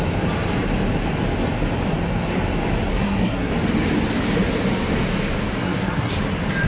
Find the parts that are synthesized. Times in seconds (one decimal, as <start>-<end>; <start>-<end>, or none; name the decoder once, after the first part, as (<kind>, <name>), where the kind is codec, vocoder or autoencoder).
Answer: 2.9-3.5 (codec, SNAC); 5.6-6.1